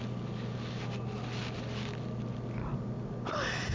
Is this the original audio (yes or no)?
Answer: yes